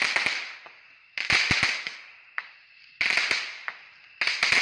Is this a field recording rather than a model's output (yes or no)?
yes